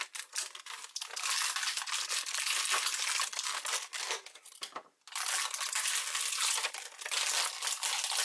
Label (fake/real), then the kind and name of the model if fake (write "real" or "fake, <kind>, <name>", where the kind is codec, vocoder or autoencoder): real